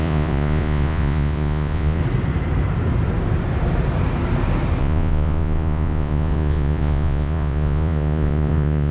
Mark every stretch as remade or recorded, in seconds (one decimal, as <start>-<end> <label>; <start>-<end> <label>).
0.0-2.0 remade; 2.0-4.8 recorded; 4.8-8.9 remade